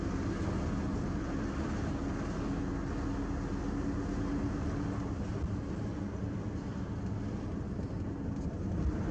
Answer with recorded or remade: recorded